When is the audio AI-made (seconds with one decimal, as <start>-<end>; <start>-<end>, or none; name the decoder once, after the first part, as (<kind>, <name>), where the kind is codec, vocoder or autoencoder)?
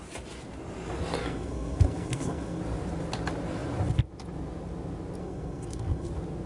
1.2-2.6 (codec, SNAC); 5.2-6.1